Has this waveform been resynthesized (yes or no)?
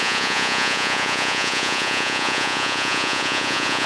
yes